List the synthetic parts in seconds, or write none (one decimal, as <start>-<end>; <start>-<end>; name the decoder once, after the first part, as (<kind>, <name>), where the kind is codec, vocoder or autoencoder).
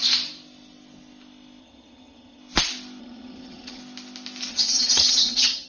1.6-2.4 (vocoder, HiFi-GAN); 3.0-3.8; 4.5-5.7